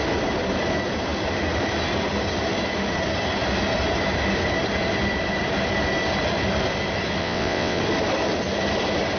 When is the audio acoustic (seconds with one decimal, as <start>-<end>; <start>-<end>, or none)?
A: 0.0-7.2; 7.8-9.2